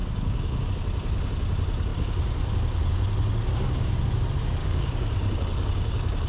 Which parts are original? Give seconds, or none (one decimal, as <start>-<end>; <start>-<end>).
0.7-4.6